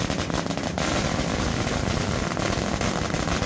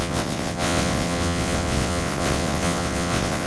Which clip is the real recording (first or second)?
first